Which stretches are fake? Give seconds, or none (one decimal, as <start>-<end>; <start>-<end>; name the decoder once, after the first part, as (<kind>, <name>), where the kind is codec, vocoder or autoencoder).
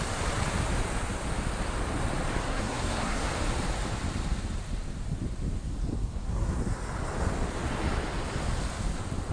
2.4-3.3 (codec, SNAC); 5.9-6.6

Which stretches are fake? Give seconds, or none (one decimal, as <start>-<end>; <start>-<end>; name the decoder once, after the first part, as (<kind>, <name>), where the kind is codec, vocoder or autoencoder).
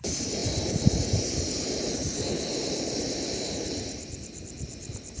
none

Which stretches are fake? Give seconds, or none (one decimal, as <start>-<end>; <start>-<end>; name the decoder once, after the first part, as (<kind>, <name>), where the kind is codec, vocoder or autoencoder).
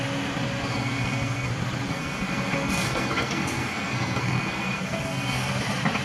0.7-1.5 (codec, SNAC); 1.9-5.5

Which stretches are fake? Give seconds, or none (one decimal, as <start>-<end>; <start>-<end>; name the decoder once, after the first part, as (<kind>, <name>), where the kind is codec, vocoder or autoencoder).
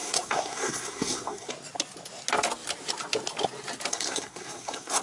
0.0-1.5 (codec, SNAC); 3.9-5.0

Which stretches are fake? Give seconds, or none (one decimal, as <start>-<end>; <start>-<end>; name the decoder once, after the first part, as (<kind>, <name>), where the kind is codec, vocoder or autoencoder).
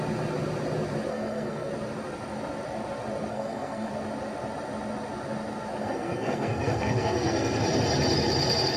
1.1-1.7 (codec, SNAC); 3.3-3.9; 5.8-7.6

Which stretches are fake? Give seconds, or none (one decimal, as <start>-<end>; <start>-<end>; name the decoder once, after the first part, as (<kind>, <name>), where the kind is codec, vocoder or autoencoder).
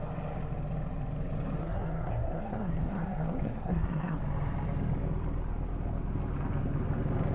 1.6-4.2 (codec, SNAC)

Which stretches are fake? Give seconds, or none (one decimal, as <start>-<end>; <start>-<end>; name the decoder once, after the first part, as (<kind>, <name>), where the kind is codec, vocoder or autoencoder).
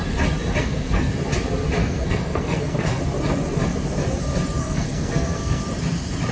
0.6-1.1 (codec, SNAC); 1.8-3.0; 4.6-5.6